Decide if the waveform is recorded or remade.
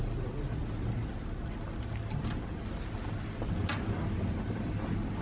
recorded